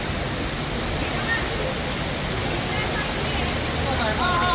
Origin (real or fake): real